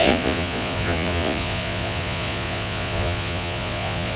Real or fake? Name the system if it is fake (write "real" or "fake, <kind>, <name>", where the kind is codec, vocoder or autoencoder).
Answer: fake, vocoder, Vocos